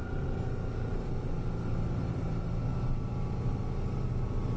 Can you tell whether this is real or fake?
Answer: real